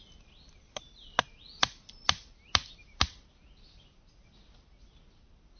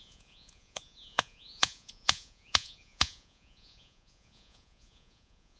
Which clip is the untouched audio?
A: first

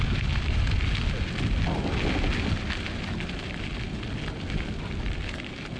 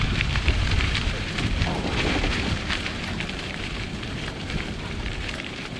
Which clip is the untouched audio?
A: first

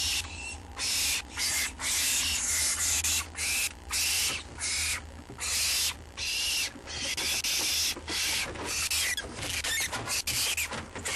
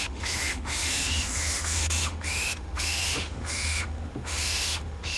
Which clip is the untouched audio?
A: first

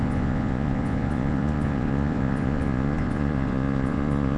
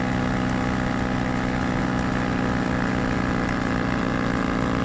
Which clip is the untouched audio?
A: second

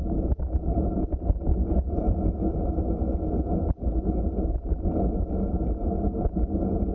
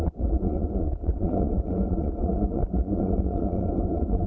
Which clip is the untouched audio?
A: first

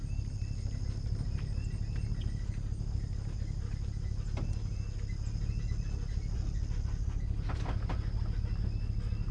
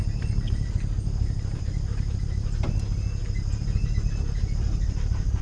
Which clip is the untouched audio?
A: first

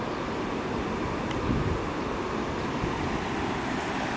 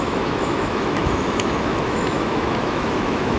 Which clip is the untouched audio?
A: first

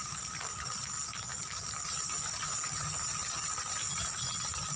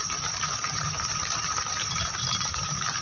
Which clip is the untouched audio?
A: first